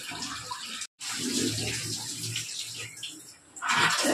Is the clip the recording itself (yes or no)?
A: yes